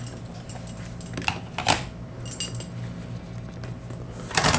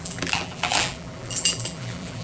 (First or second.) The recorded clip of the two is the first